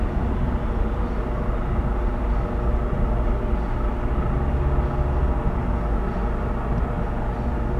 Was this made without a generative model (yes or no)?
yes